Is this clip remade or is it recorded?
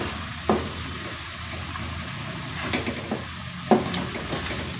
recorded